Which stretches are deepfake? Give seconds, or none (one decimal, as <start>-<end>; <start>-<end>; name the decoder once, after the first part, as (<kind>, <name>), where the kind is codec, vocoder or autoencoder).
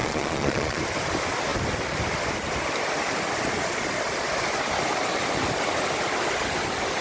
0.0-0.8 (vocoder, Vocos)